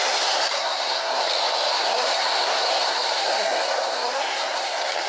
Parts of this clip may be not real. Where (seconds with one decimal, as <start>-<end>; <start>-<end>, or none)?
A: 0.0-1.2; 1.7-5.1

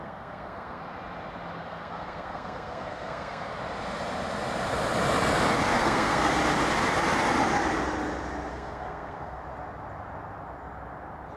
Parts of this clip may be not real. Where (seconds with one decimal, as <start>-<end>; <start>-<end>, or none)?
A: 0.0-0.8; 1.6-3.6; 5.7-6.4; 8.5-9.4

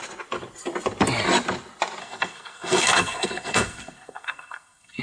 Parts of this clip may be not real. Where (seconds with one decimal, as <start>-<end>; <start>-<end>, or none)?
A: 2.0-5.0